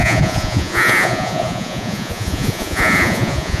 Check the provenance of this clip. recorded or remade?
remade